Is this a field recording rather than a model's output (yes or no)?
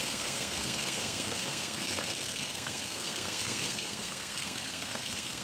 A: no